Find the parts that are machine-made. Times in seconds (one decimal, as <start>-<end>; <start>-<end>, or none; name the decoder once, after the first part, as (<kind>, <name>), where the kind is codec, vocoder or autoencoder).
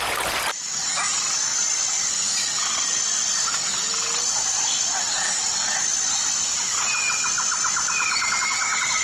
none